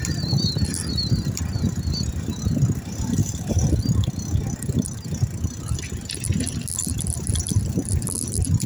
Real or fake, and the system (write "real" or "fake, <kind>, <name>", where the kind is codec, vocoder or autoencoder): real